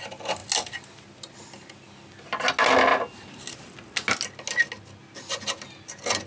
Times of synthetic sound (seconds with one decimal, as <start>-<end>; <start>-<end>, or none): none